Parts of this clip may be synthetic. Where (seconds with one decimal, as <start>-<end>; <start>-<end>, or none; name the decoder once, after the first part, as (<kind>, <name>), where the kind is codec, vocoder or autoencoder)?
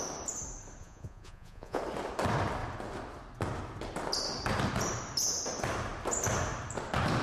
0.8-1.8 (vocoder, Vocos)